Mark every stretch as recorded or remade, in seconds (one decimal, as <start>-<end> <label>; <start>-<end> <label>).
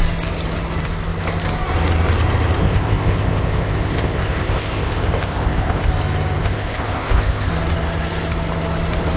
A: 0.0-2.6 recorded; 2.6-5.9 remade; 5.9-6.4 recorded; 6.4-7.5 remade; 7.5-9.2 recorded